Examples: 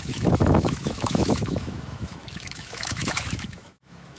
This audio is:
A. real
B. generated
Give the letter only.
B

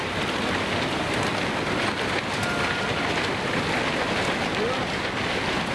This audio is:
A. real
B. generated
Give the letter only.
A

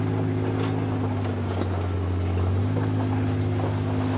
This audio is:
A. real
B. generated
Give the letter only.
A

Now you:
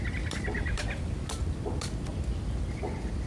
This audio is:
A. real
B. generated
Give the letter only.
A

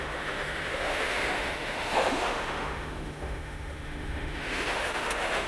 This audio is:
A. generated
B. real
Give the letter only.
A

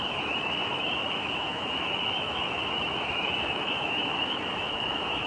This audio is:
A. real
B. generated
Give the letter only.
B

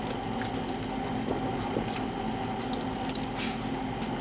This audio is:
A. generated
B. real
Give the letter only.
B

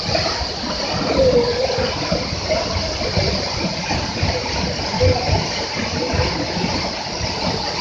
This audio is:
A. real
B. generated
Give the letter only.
A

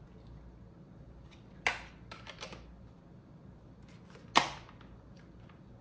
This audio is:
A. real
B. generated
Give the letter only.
A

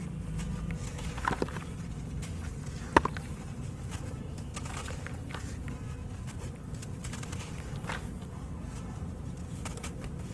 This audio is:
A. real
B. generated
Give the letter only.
A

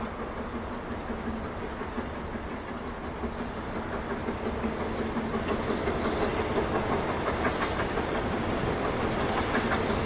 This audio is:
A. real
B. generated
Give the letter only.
A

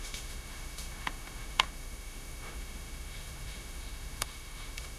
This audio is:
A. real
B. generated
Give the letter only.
B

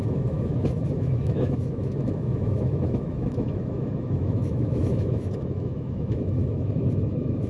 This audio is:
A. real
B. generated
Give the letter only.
B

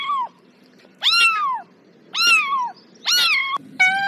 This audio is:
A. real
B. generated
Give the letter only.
A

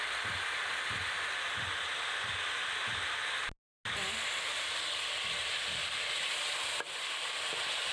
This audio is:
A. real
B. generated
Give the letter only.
A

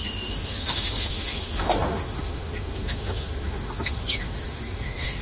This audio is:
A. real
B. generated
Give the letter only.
B